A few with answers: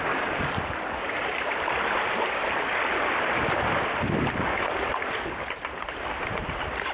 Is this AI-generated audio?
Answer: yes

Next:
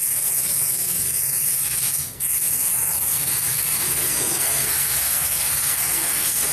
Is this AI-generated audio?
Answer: yes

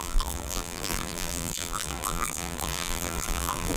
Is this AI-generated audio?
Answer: yes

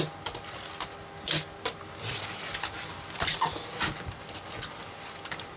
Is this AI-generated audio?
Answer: no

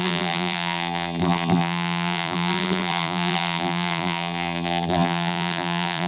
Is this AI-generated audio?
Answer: yes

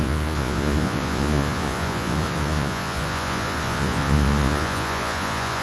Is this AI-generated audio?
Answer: yes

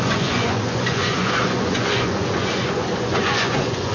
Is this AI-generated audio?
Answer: yes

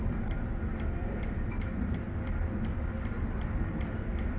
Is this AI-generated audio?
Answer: no